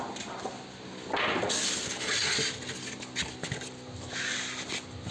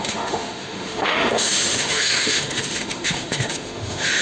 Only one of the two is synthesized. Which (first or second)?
second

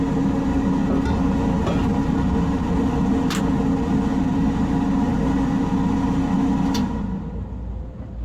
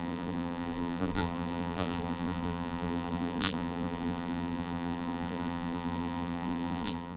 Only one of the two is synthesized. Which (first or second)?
second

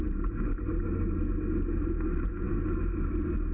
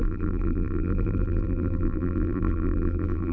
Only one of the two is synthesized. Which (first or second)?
second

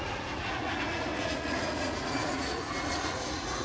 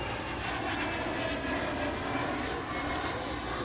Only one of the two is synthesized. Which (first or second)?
first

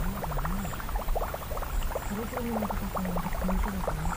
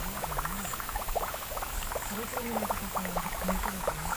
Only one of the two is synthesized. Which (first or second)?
second